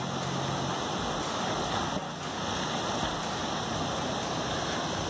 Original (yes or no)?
yes